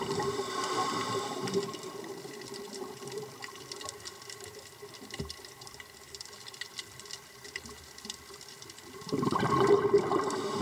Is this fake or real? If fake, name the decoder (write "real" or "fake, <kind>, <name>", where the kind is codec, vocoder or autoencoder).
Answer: fake, vocoder, BigVGAN v2